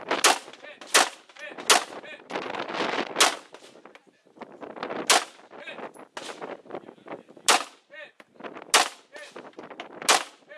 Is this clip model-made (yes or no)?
no